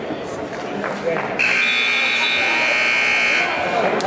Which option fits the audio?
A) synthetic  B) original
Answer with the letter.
B